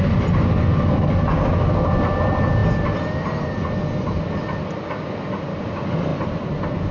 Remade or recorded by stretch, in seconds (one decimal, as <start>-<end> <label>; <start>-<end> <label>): 0.0-6.9 recorded